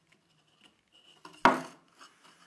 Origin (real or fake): real